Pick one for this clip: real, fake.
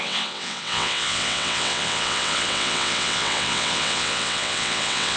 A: fake